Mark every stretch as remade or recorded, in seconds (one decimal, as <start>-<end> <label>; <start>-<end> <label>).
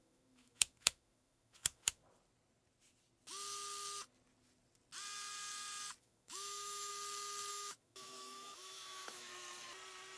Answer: 0.0-2.0 remade; 2.0-6.0 recorded; 6.0-6.9 remade; 6.9-7.5 recorded; 7.5-9.3 remade; 9.3-10.2 recorded